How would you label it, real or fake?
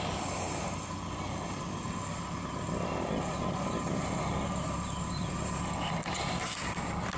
real